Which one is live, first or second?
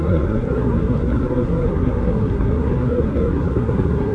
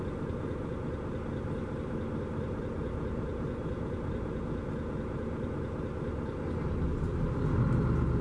second